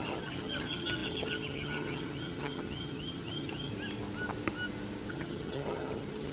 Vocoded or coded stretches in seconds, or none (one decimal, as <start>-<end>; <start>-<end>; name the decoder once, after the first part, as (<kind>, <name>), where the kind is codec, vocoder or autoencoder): 0.0-3.7 (vocoder, HiFi-GAN); 5.1-6.3

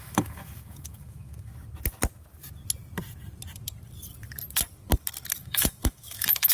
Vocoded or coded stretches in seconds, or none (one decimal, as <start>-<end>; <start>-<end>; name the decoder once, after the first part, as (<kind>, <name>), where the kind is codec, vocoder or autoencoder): 0.0-1.5 (autoencoder, DAC-VAE); 5.4-6.5

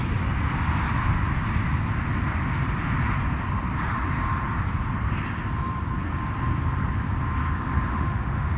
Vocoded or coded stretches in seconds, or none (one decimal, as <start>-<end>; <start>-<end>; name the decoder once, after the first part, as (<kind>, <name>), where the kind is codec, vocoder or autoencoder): 7.9-8.6 (autoencoder, DAC-VAE)

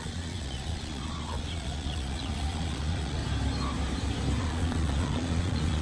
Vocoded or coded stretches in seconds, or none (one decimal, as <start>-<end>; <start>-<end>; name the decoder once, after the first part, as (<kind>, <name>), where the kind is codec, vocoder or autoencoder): 0.0-3.2 (vocoder, Vocos); 4.4-5.8

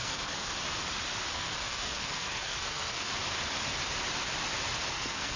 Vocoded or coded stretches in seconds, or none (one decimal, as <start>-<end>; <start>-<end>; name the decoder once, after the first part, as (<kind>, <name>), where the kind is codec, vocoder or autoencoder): 0.0-0.5 (codec, SNAC); 1.3-3.1; 4.9-5.4

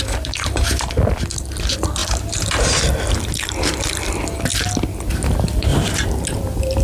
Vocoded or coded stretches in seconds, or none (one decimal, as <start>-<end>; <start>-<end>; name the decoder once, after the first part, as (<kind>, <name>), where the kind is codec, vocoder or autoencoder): 0.0-4.5 (vocoder, BigVGAN v2); 5.1-5.7

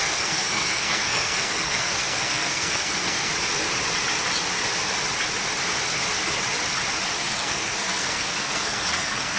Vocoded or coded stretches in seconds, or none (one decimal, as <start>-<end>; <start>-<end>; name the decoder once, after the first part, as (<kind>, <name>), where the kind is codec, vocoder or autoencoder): 0.0-3.3 (codec, SNAC); 7.2-9.4

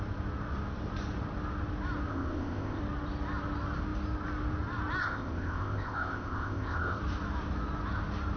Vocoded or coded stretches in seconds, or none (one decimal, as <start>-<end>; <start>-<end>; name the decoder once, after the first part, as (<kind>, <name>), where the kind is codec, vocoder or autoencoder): 2.1-2.8 (codec, ZipCodec); 5.0-7.0